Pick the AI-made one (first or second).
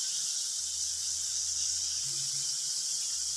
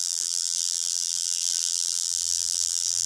second